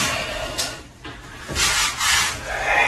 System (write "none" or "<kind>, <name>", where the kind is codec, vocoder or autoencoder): none